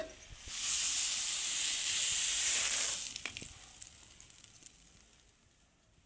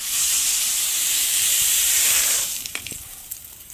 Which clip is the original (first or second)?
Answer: first